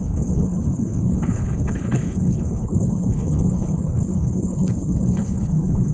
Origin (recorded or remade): remade